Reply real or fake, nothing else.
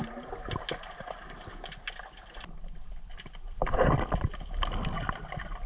real